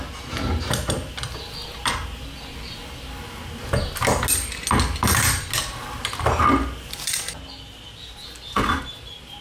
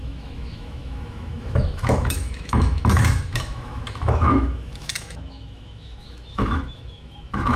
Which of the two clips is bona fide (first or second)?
first